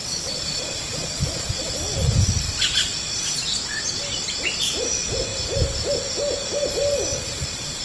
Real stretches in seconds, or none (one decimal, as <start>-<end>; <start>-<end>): 1.7-7.1